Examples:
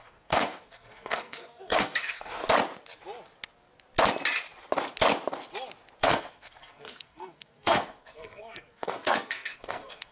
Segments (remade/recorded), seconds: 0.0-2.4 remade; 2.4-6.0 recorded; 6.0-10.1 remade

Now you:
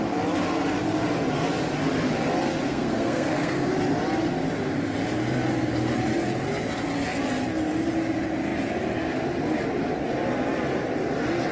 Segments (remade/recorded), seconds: 0.0-2.7 recorded; 2.7-3.7 remade; 3.7-11.5 recorded